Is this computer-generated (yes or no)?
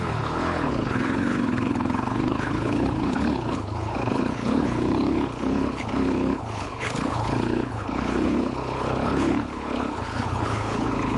yes